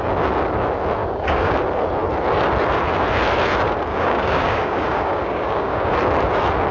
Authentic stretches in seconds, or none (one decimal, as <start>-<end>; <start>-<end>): 0.0-1.0; 1.6-3.9; 5.9-6.7